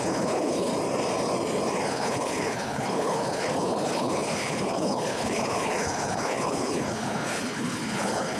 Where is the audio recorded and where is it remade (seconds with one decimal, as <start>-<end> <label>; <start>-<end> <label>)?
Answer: 0.0-0.7 remade; 0.7-1.9 recorded; 1.9-8.4 remade